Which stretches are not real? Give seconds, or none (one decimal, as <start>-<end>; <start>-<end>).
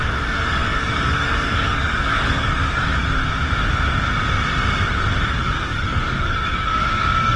0.0-3.0; 5.2-7.4